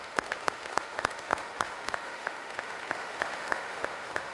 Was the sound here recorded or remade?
remade